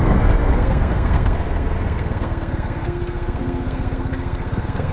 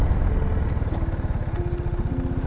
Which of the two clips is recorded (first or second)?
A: second